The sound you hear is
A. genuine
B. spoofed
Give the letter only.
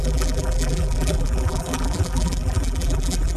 B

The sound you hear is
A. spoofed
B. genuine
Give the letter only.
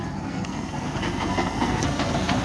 A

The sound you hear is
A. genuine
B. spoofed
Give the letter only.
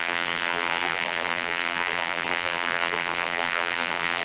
B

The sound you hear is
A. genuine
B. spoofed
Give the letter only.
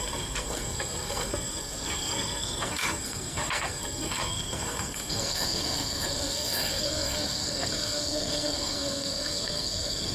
B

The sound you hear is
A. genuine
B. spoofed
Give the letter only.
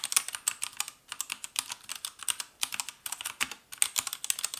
A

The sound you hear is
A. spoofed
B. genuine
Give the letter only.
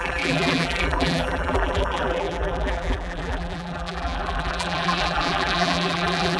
A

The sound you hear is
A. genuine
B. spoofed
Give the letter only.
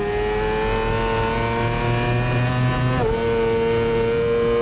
A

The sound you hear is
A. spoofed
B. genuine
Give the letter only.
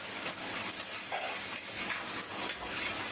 B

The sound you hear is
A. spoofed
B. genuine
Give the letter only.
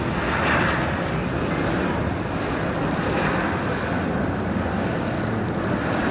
B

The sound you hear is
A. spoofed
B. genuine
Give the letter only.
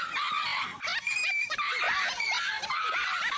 B